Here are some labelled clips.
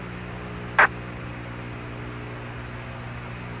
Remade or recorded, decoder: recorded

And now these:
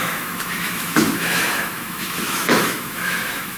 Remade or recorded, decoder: remade, autoencoder, DAC-VAE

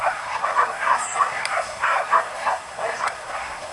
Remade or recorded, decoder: remade, codec, SNAC